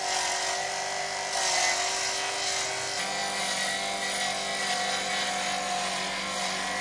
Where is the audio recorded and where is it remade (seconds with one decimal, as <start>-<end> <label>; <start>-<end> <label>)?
0.0-6.8 recorded

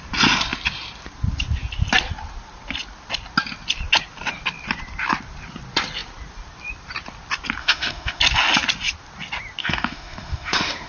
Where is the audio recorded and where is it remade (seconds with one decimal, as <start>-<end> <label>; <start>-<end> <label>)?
0.0-7.6 recorded; 7.6-8.2 remade; 8.2-9.6 recorded; 9.6-10.9 remade

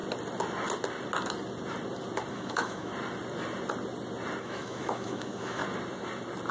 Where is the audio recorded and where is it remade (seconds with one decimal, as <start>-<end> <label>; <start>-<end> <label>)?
0.0-2.3 recorded; 2.3-2.9 remade; 2.9-4.4 recorded; 4.4-5.6 remade; 5.6-6.5 recorded

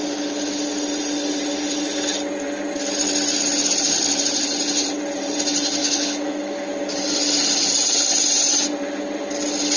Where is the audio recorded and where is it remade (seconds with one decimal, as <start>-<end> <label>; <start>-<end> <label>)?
0.0-5.8 recorded; 5.8-6.7 remade; 6.7-9.8 recorded

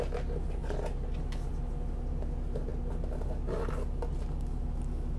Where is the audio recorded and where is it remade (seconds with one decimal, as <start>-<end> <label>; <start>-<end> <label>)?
0.0-5.2 recorded

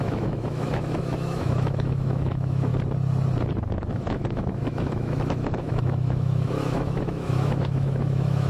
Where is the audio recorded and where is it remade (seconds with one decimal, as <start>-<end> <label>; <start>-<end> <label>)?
0.0-2.7 remade; 2.7-3.9 recorded; 3.9-8.5 remade

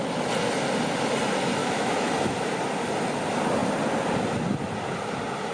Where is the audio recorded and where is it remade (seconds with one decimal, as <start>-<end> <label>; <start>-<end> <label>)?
0.0-1.6 recorded; 1.6-2.1 remade; 2.1-5.5 recorded

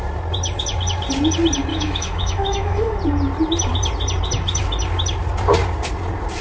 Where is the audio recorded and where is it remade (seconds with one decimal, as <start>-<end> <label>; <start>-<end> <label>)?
0.0-1.7 recorded; 1.7-3.0 remade; 3.0-6.4 recorded